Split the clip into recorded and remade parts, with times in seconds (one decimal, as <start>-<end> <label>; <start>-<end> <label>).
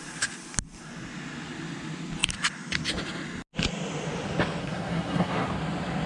0.0-4.6 recorded; 4.6-5.5 remade; 5.5-6.1 recorded